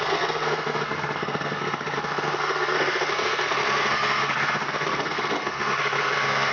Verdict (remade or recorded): remade